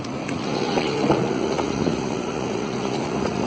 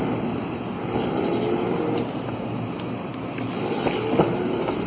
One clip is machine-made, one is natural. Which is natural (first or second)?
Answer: second